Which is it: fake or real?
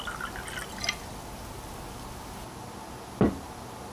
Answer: real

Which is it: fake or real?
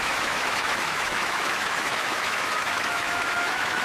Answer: fake